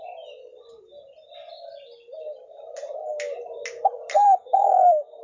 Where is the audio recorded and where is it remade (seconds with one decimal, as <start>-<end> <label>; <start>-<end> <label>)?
0.0-4.1 recorded; 4.1-5.2 remade